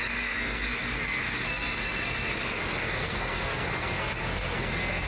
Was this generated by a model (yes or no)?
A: yes